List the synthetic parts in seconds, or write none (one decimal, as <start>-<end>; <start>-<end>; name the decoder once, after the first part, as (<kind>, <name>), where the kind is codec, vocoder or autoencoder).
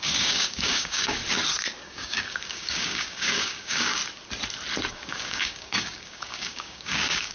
0.0-1.2 (codec, DAC); 1.8-4.0; 4.9-7.3